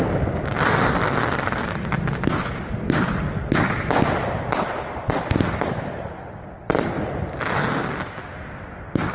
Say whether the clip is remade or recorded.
recorded